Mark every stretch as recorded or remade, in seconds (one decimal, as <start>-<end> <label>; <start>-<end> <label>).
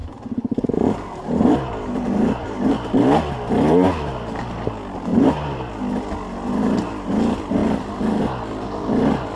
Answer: 0.0-2.7 remade; 2.7-5.1 recorded; 5.1-5.7 remade; 5.7-9.4 recorded